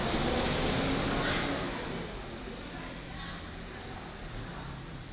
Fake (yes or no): no